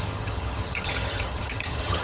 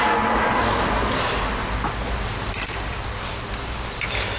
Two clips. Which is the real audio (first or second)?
second